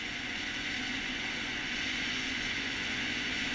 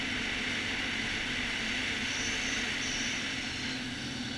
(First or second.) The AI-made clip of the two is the first